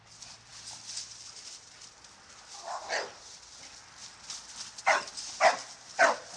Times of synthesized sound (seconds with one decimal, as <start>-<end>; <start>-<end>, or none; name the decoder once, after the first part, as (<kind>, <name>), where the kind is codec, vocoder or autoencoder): none